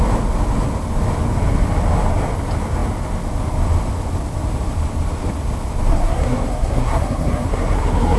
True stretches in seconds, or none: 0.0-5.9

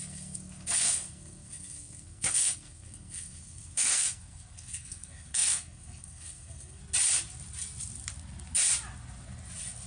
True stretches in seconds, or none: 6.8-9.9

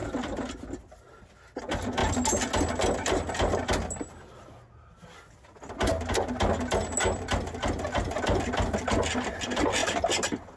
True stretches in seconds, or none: 1.6-9.8

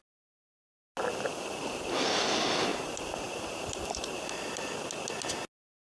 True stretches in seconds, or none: 0.0-2.7; 4.7-5.9

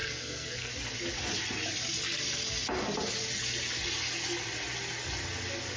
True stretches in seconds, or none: 0.7-5.8